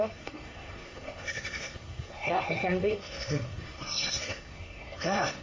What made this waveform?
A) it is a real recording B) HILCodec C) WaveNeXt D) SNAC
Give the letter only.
D